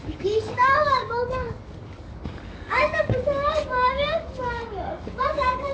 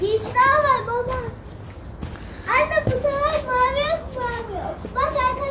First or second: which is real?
second